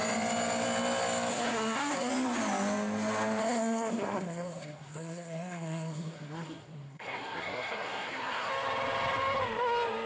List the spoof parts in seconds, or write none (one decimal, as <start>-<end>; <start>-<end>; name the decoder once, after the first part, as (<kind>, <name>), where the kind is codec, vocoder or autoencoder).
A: 1.3-2.1 (codec, SNAC); 3.4-8.5